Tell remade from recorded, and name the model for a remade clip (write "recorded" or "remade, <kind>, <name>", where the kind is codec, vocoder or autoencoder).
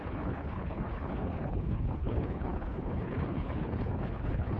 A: remade, codec, HILCodec